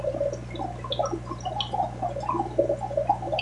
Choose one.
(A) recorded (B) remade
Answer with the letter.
A